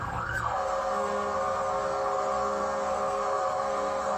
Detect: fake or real fake